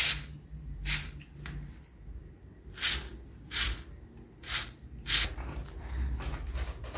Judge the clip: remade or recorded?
recorded